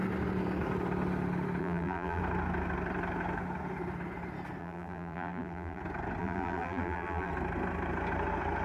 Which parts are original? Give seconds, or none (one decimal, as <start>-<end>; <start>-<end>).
0.0-1.6; 2.2-4.6; 5.8-6.2; 7.3-8.6